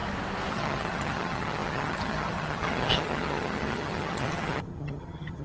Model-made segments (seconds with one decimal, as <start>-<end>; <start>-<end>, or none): 0.5-5.4